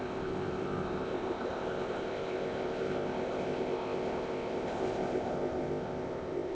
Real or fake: fake